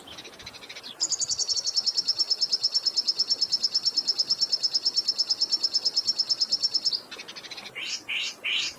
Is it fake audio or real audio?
real